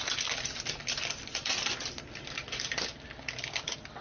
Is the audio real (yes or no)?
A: yes